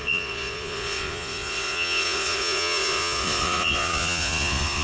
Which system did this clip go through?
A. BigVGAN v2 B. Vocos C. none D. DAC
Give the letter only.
B